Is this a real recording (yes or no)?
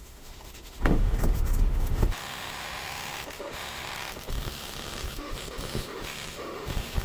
no